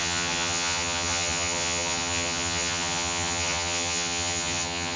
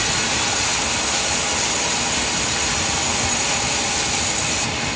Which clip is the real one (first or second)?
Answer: second